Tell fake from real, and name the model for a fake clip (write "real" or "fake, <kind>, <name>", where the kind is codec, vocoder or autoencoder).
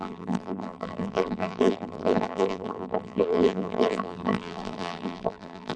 fake, vocoder, BigVGAN v2